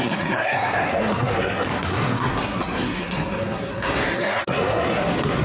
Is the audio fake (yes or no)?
yes